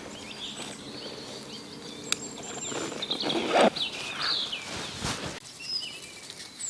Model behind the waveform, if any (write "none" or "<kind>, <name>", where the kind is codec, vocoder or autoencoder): none